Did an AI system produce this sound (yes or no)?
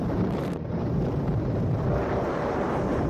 yes